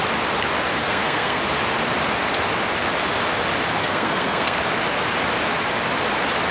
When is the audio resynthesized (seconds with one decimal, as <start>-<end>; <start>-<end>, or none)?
0.8-1.4; 3.8-4.6